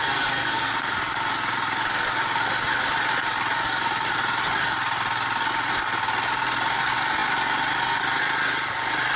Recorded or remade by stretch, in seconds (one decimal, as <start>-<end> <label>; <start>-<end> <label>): 0.0-0.7 remade; 0.7-9.2 recorded